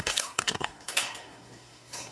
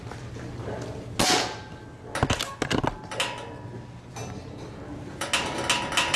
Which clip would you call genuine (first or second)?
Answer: second